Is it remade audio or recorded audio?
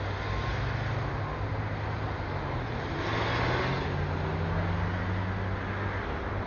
recorded